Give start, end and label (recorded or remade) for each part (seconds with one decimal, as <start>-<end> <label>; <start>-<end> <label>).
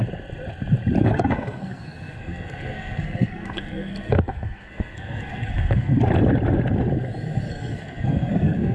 0.0-1.0 recorded; 1.0-5.9 remade; 5.9-7.5 recorded; 7.5-8.7 remade